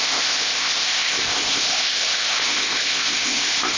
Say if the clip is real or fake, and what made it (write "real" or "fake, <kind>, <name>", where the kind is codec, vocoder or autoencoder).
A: fake, codec, ZipCodec